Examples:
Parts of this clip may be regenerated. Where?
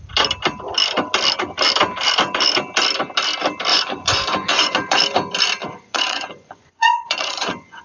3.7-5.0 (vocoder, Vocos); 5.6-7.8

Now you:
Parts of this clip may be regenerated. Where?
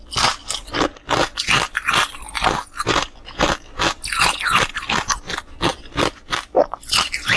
none